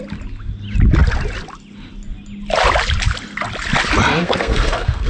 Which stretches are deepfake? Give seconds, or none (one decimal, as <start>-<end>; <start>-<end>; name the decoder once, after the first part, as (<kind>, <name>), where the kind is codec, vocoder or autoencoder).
4.2-5.1 (codec, SNAC)